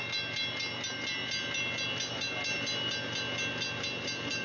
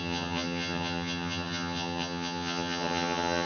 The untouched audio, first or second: first